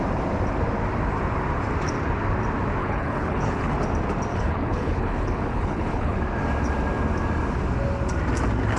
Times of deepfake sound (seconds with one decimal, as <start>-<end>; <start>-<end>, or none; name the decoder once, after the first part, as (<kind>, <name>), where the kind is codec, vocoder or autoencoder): 2.8-3.7 (codec, HILCodec); 4.3-6.2